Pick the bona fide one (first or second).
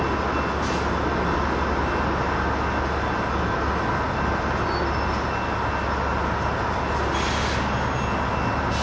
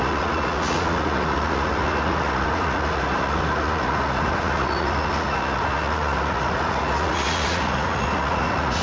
first